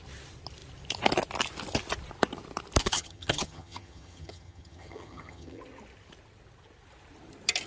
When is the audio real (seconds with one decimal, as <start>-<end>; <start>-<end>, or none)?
0.0-2.8; 5.6-7.7